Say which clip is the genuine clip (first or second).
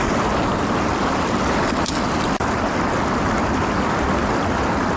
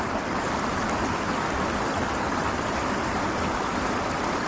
first